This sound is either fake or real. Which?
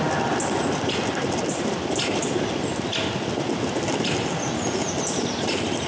real